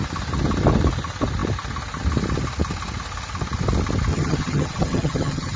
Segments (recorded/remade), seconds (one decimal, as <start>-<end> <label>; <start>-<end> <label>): 0.0-4.1 recorded; 4.1-5.6 remade